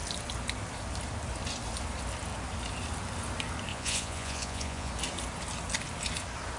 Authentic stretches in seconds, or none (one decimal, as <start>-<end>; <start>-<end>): 0.0-3.7; 4.9-6.6